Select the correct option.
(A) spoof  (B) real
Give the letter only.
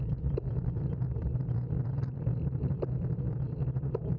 A